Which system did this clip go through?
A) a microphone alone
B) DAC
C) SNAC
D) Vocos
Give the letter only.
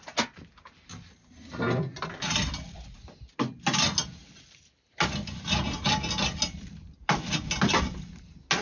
A